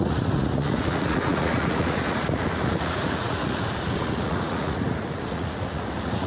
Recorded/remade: remade